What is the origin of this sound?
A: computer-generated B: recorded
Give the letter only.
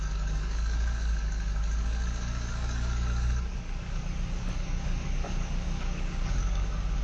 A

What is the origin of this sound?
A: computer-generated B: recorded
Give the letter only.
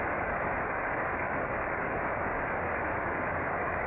A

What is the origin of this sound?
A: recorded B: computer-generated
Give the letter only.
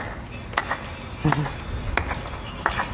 A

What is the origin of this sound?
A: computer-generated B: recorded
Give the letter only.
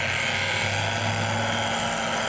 B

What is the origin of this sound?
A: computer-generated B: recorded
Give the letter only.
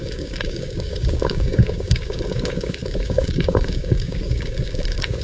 A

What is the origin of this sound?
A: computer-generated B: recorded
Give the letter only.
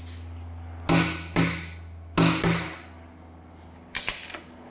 B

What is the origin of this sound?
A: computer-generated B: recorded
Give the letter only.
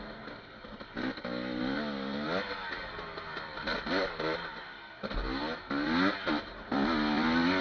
B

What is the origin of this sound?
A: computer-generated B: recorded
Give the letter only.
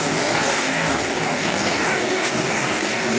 A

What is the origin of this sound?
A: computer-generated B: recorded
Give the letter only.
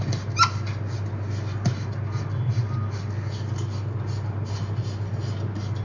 B